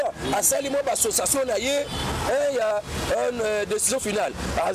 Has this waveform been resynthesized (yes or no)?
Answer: no